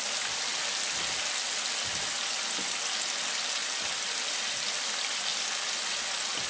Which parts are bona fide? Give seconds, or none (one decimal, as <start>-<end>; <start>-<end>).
0.0-3.6; 4.1-6.5